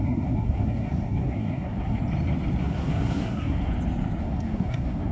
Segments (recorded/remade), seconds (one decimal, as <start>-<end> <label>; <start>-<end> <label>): 0.0-2.0 remade; 2.0-2.6 recorded; 2.6-3.7 remade; 3.7-4.2 recorded; 4.2-5.1 remade

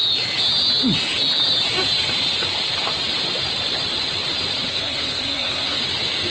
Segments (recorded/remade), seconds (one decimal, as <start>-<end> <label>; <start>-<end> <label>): 0.0-4.7 recorded; 4.7-5.8 remade; 5.8-6.3 recorded